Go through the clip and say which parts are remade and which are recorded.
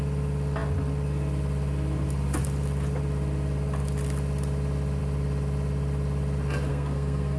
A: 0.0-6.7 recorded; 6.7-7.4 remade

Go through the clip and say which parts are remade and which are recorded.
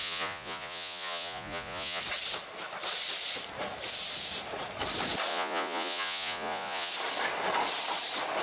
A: 0.0-2.0 remade; 2.0-5.3 recorded; 5.3-6.9 remade; 6.9-8.4 recorded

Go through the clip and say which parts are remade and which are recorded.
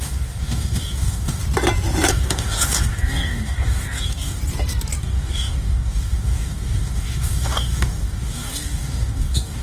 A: 0.0-1.4 remade; 1.4-2.1 recorded; 2.1-4.4 remade; 4.4-5.0 recorded; 5.0-9.6 remade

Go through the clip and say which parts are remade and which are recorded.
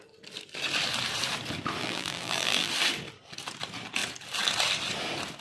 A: 0.0-1.8 recorded; 1.8-2.7 remade; 2.7-5.4 recorded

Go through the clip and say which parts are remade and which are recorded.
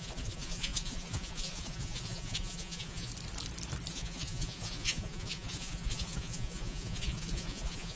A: 0.0-3.1 remade; 3.1-3.9 recorded; 3.9-8.0 remade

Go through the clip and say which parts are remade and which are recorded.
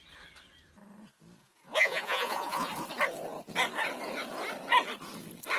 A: 0.0-1.4 recorded; 1.4-2.7 remade; 2.7-5.6 recorded